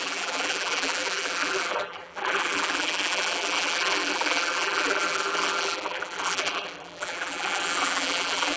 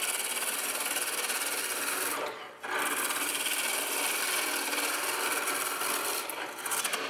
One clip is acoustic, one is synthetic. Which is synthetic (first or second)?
first